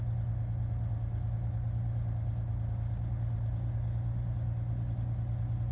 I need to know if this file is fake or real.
real